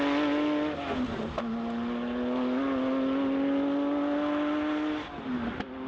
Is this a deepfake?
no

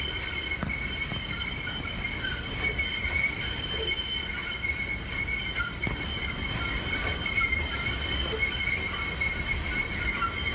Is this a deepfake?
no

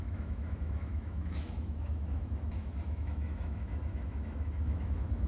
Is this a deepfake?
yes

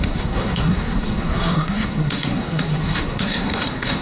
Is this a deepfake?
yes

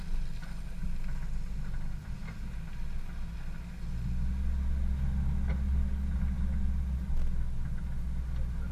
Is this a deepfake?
no